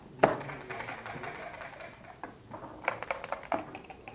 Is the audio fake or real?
real